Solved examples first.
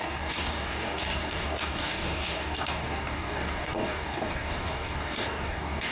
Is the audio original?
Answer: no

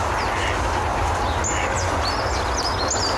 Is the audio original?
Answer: yes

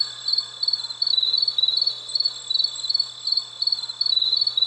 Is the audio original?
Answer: yes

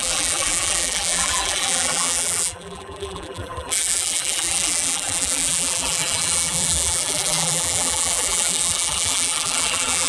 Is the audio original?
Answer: no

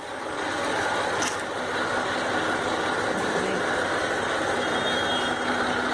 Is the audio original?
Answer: yes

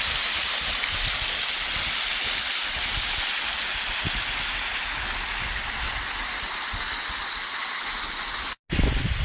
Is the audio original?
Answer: yes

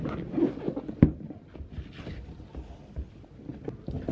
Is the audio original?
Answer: yes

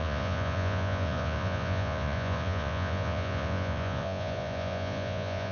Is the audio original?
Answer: no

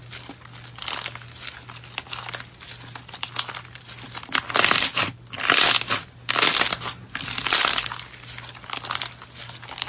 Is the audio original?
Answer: yes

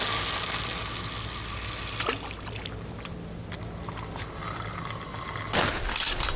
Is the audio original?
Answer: yes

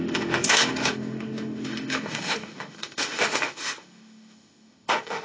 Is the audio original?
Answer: no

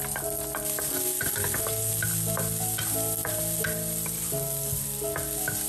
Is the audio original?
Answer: yes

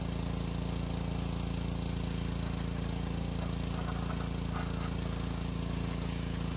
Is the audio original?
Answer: yes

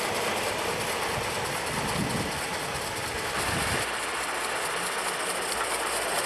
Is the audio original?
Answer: yes